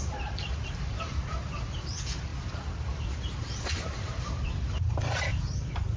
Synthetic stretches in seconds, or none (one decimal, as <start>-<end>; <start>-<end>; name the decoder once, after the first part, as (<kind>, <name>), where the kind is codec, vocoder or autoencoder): 0.0-5.3 (vocoder, BigVGAN v2)